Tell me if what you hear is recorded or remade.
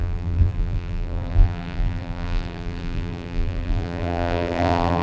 remade